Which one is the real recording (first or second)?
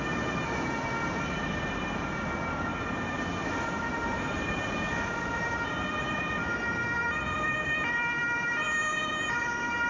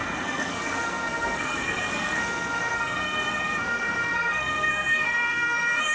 first